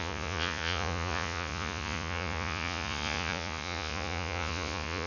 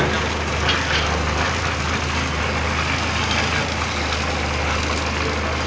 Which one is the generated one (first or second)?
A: first